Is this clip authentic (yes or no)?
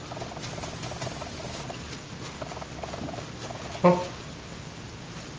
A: yes